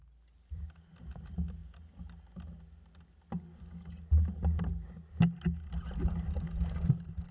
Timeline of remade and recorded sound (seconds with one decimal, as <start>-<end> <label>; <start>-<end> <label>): 0.0-7.3 recorded